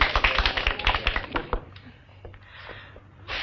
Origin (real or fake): real